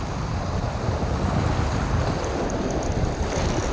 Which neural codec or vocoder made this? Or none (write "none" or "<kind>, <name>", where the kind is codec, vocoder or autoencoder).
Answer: none